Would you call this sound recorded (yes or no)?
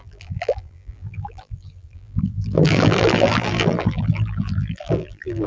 no